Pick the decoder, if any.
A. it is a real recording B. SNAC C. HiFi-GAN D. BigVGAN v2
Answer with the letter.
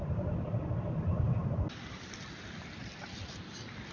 A